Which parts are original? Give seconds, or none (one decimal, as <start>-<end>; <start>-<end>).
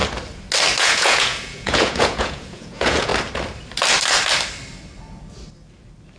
0.0-0.8; 3.1-6.2